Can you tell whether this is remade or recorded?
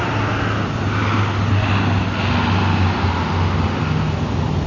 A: recorded